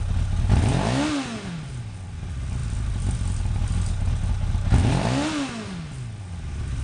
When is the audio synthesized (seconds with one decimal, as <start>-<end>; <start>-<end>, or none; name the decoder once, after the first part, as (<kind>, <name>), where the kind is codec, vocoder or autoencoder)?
none